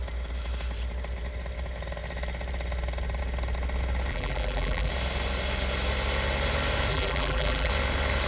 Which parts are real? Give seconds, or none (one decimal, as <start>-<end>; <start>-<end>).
0.0-4.1; 4.9-6.9; 7.7-8.3